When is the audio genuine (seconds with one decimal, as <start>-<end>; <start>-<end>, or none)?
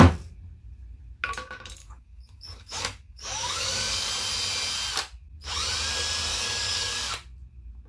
0.0-1.8; 4.1-6.3; 7.1-7.9